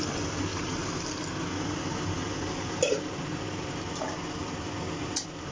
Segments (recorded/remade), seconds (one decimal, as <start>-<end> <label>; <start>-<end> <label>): 0.0-5.5 recorded